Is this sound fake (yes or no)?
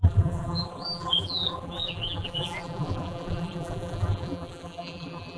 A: yes